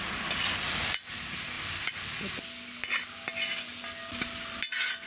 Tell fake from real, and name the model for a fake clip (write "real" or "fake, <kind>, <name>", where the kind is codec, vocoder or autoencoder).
real